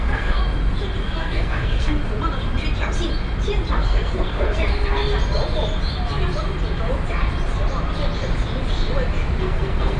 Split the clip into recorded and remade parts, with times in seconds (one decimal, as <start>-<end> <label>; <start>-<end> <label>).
0.0-0.4 remade; 0.4-1.0 recorded; 1.0-2.0 remade; 2.0-3.7 recorded; 3.7-5.0 remade; 5.0-9.4 recorded; 9.4-10.0 remade